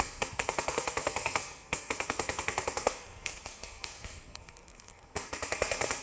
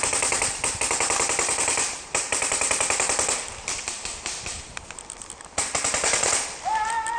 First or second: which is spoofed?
first